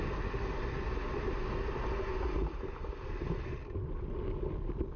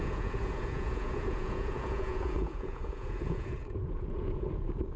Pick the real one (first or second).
first